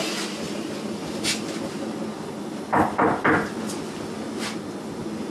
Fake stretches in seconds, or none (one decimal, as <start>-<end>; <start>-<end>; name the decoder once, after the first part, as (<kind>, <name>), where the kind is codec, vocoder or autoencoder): none